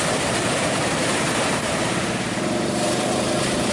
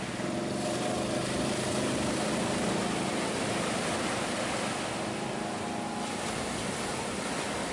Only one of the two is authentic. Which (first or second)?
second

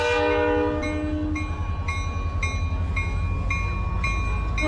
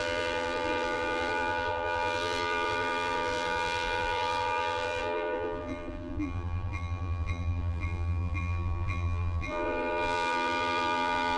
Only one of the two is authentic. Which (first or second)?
first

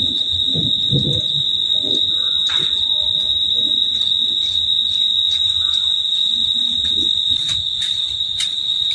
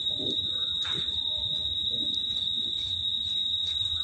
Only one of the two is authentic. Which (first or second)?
first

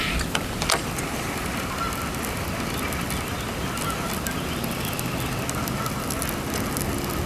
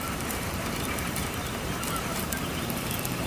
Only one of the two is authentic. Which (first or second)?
first